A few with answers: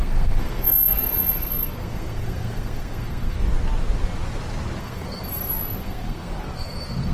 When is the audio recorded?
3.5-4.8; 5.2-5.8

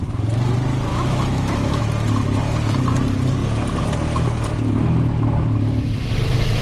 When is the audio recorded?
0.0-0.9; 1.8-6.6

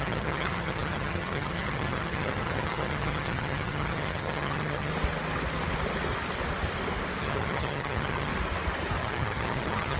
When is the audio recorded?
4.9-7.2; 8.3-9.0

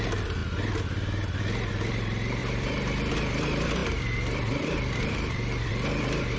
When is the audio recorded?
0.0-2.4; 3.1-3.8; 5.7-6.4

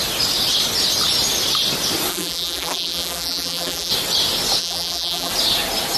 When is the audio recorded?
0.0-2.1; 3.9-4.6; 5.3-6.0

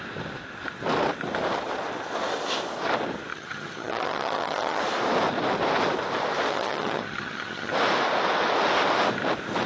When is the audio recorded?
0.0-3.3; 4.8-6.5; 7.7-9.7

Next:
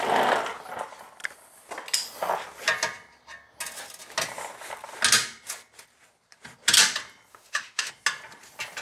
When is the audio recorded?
0.0-7.3; 7.9-8.8

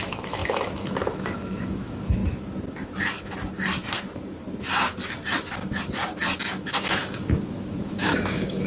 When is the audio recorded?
2.2-6.5